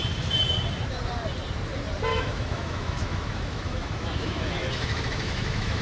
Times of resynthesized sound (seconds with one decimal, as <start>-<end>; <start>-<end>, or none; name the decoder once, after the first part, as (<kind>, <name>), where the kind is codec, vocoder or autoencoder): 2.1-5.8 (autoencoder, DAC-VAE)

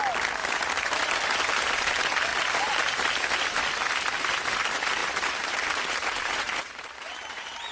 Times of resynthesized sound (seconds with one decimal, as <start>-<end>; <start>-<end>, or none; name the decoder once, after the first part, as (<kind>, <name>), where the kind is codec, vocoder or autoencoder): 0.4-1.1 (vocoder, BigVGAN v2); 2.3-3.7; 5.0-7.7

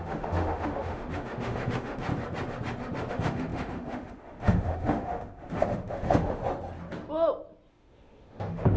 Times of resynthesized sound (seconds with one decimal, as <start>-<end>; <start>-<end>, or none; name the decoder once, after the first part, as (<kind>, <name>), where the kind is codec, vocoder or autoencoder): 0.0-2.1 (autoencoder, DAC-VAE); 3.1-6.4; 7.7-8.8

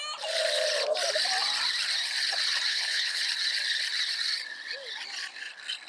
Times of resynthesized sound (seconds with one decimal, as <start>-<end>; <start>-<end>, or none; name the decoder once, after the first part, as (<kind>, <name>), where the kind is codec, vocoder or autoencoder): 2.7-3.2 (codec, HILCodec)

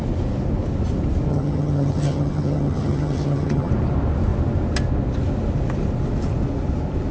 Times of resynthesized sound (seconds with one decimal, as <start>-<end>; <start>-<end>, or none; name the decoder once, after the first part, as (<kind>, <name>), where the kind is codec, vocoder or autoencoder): 1.3-3.7 (vocoder, HiFi-GAN)

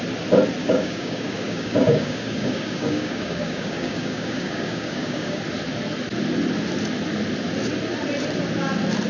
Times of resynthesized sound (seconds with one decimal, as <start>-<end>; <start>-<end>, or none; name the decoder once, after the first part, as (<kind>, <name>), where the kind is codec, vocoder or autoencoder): 0.6-5.4 (codec, DAC)

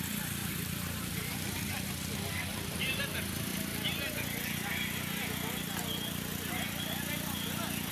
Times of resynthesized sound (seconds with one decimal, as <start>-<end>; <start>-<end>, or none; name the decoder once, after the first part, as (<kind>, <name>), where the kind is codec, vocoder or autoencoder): 0.4-1.9 (vocoder, BigVGAN v2); 2.5-3.0

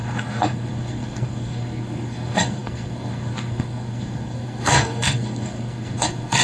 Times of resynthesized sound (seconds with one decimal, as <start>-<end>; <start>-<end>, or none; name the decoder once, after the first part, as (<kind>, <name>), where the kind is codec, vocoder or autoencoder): 0.0-6.4 (codec, SNAC)